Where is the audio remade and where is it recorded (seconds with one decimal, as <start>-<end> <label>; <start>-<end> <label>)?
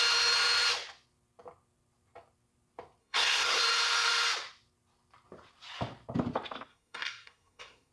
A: 0.0-3.0 recorded; 3.0-3.6 remade; 3.6-6.7 recorded; 6.7-7.9 remade